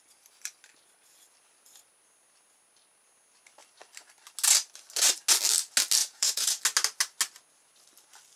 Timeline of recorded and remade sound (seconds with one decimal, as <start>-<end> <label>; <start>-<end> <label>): 0.0-6.0 recorded; 6.0-6.6 remade; 6.6-8.4 recorded